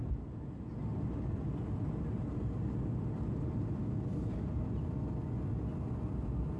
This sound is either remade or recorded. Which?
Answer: recorded